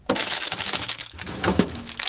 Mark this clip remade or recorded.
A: remade